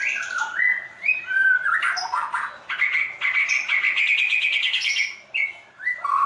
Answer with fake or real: real